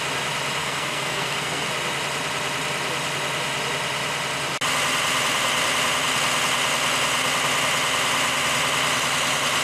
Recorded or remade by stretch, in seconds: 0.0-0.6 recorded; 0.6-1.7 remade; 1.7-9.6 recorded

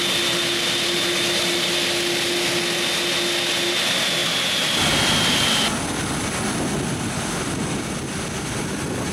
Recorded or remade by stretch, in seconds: 0.0-9.1 recorded

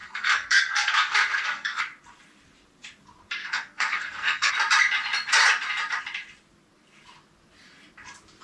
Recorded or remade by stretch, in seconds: 0.0-1.8 remade; 1.8-3.4 recorded; 3.4-4.5 remade; 4.5-8.4 recorded

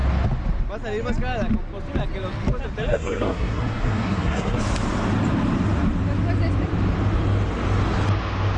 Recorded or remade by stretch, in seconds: 0.0-2.9 recorded; 2.9-4.6 remade; 4.6-8.6 recorded